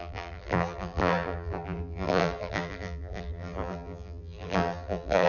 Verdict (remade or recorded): remade